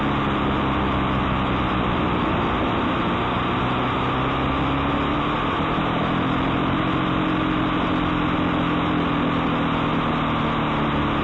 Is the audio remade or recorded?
recorded